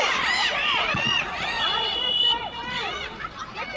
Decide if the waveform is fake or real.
fake